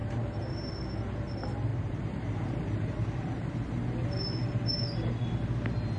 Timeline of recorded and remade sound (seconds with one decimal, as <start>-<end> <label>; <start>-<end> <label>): 0.0-0.7 remade; 0.7-1.7 recorded; 1.7-3.5 remade; 3.5-6.0 recorded